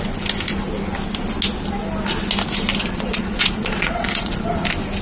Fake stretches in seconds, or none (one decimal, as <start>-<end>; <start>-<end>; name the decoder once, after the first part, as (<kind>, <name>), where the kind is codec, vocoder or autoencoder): 2.8-4.3 (vocoder, Vocos)